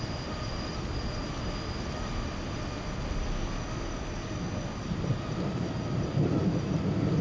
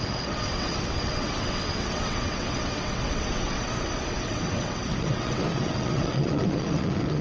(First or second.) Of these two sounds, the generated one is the second